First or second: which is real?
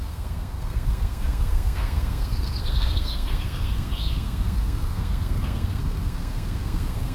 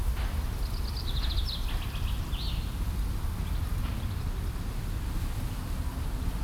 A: second